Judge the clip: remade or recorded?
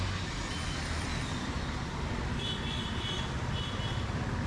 recorded